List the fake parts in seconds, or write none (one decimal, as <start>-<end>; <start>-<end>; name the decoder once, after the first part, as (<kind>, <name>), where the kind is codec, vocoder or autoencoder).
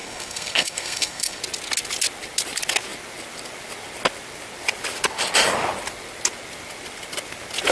0.0-1.4 (codec, SNAC)